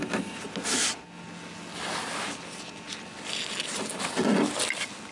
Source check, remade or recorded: recorded